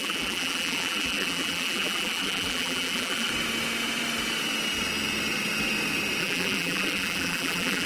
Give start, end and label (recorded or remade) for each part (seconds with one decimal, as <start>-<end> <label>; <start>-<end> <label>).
0.0-3.3 remade; 3.3-6.2 recorded; 6.2-7.9 remade

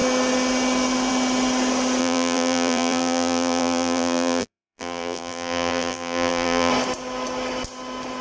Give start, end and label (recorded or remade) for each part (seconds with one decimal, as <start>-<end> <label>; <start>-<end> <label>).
0.0-2.0 recorded; 2.0-6.7 remade; 6.7-8.2 recorded

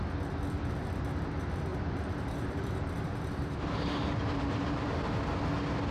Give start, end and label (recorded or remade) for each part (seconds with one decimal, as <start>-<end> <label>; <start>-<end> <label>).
0.0-1.7 recorded; 1.7-5.2 remade; 5.2-5.9 recorded

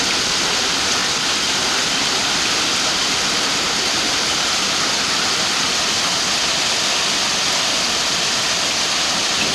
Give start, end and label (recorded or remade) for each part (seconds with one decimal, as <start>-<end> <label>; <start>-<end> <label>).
0.0-1.0 recorded; 1.0-1.6 remade; 1.6-9.5 recorded

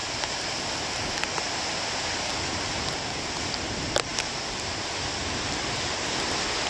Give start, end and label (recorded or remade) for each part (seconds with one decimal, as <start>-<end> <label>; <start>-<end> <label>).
0.0-3.2 recorded; 3.2-6.7 remade

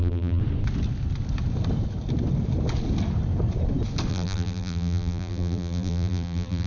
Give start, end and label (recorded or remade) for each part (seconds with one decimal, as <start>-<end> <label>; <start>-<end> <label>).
0.0-0.4 remade; 0.4-4.1 recorded; 4.1-6.7 remade

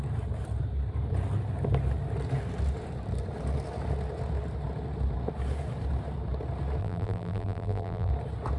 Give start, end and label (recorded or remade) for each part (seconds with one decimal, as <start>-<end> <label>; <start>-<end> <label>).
0.0-6.8 recorded; 6.8-8.1 remade; 8.1-8.6 recorded

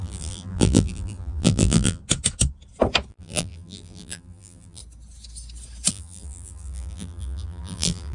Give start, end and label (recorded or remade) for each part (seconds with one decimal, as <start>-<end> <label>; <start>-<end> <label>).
0.0-2.0 remade; 2.0-3.1 recorded; 3.1-4.8 remade; 4.8-5.9 recorded; 5.9-8.1 remade